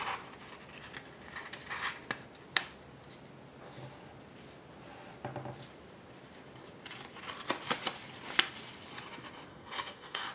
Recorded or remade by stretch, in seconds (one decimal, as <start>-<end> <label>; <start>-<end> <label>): 0.0-9.5 recorded; 9.5-10.3 remade